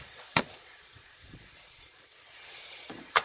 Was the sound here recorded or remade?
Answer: remade